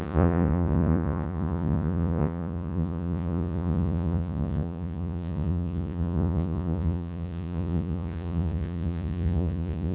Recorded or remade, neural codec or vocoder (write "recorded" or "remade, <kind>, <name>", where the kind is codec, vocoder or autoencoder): remade, vocoder, Vocos